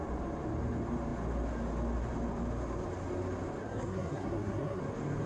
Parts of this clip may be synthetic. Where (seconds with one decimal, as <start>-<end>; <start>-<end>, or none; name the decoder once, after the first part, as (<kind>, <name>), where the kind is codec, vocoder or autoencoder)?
3.6-4.8 (codec, SNAC)